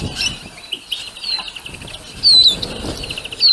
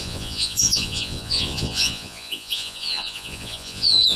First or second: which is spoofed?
second